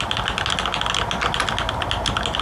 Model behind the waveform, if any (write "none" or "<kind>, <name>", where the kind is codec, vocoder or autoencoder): none